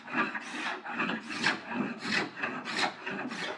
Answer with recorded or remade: recorded